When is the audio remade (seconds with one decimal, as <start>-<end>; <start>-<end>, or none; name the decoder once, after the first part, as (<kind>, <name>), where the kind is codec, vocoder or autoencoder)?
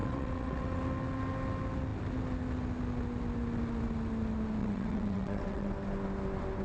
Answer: 0.0-0.8 (vocoder, WaveNeXt); 4.6-5.7